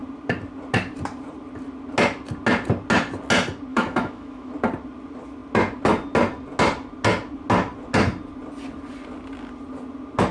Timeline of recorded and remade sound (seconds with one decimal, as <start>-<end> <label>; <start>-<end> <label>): 0.0-3.7 recorded; 3.7-4.5 remade; 4.5-10.3 recorded